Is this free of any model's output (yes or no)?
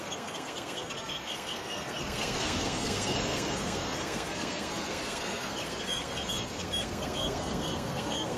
no